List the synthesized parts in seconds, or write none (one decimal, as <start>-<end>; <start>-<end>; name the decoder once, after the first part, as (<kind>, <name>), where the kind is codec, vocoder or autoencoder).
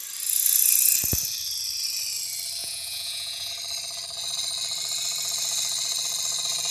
2.6-3.5 (vocoder, Vocos)